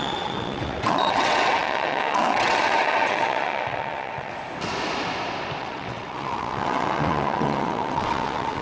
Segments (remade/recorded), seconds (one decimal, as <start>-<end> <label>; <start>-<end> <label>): 0.0-4.3 remade; 4.3-5.6 recorded; 5.6-8.6 remade